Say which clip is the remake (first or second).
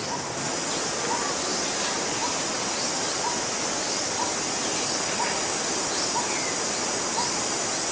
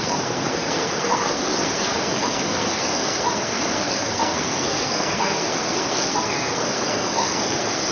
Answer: second